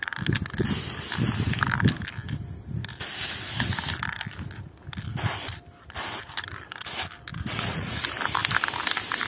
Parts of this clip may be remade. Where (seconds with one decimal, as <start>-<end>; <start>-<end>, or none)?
7.3-8.0